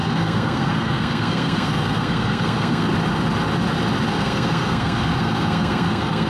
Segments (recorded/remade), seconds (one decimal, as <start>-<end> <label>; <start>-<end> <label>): 0.0-2.9 remade; 2.9-4.1 recorded; 4.1-6.3 remade